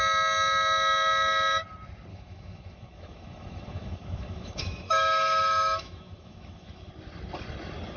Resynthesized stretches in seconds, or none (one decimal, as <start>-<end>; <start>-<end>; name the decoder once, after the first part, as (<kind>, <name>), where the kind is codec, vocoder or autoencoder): 2.1-6.9 (autoencoder, DAC-VAE)